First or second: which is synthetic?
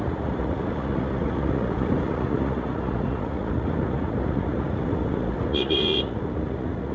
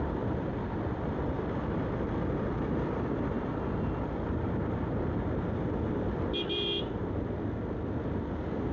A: first